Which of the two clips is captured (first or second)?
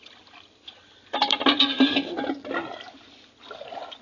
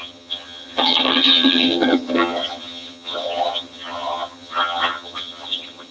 first